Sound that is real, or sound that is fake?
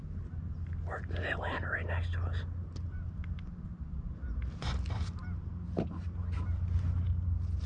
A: real